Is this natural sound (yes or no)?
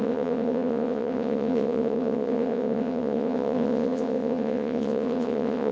no